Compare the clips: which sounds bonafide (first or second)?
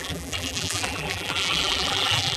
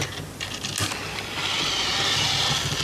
second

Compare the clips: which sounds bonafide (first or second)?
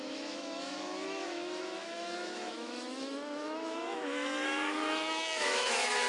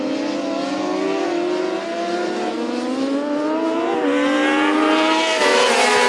second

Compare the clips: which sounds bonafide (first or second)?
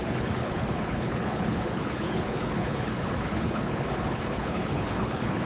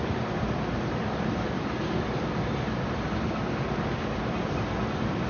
second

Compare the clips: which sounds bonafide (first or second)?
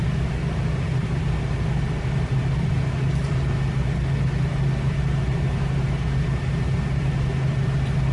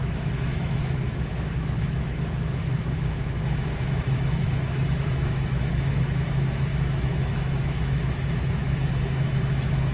first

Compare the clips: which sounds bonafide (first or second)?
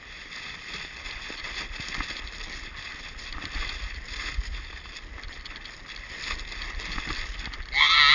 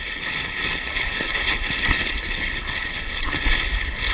first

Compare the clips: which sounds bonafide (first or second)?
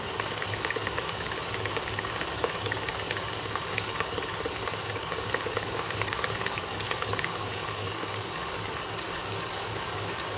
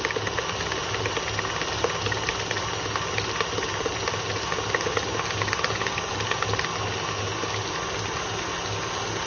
second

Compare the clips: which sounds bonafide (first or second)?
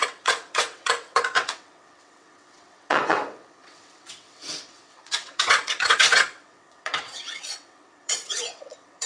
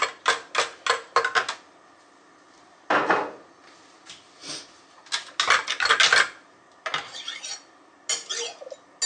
second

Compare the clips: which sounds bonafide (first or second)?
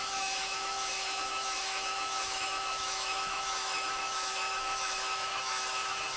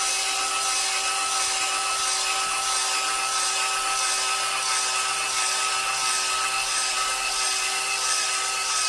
second